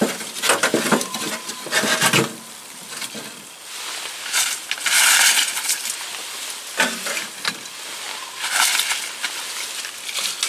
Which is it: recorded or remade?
recorded